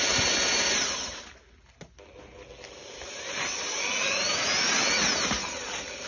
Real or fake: real